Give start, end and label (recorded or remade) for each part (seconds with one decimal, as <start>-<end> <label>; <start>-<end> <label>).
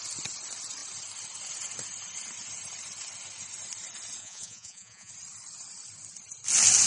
0.0-4.2 recorded; 4.2-5.1 remade; 5.1-6.9 recorded